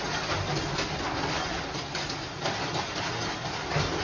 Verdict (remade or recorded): recorded